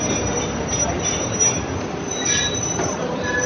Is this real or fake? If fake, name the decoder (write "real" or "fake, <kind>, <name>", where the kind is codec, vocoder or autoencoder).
real